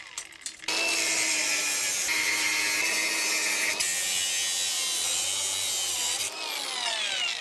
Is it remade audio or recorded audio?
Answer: recorded